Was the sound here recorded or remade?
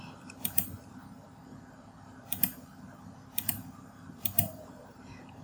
remade